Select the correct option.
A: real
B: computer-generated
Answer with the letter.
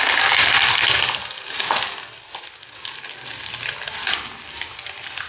A